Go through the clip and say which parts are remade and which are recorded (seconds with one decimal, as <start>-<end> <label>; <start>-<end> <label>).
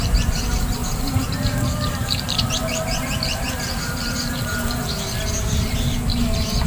0.0-6.7 remade